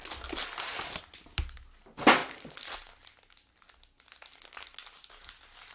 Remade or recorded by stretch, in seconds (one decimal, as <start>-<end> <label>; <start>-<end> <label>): 0.0-5.7 recorded

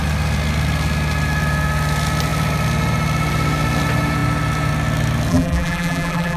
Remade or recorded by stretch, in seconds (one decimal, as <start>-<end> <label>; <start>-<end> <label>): 0.0-5.3 recorded; 5.3-6.4 remade

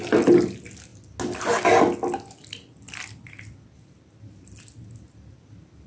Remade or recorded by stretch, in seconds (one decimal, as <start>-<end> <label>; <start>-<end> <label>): 0.0-5.9 recorded

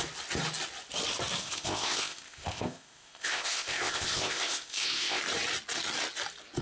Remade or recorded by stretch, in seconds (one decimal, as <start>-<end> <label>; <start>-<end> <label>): 0.0-1.4 recorded; 1.4-5.2 remade; 5.2-6.6 recorded

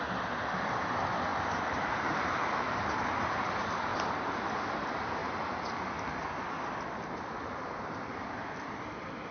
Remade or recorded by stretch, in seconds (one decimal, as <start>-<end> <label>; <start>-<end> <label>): 0.0-1.3 recorded; 1.3-3.0 remade; 3.0-3.9 recorded; 3.9-4.4 remade; 4.4-5.2 recorded; 5.2-5.8 remade; 5.8-9.3 recorded

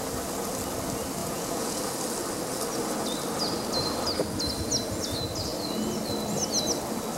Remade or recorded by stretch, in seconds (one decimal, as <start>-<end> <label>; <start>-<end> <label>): 0.0-1.2 recorded; 1.2-1.8 remade; 1.8-7.2 recorded